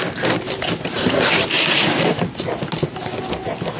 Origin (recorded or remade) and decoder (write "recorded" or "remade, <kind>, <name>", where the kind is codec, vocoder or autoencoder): recorded